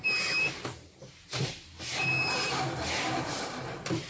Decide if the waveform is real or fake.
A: fake